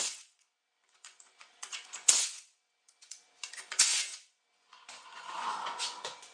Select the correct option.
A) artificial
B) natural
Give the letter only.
A